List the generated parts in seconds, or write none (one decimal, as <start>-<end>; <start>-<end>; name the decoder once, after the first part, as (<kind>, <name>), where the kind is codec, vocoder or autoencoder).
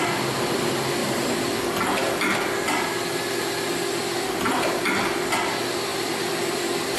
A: 4.0-4.8 (vocoder, BigVGAN v2); 5.9-7.0